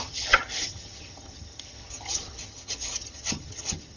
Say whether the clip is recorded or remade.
remade